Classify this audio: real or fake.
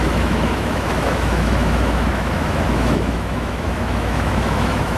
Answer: fake